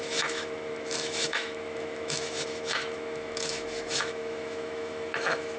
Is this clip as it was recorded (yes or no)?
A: no